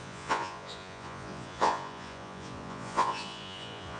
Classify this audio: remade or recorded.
remade